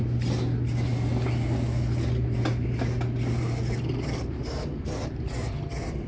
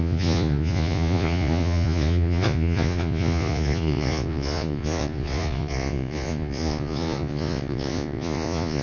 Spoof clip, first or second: second